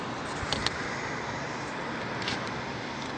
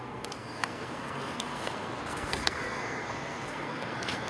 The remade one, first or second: second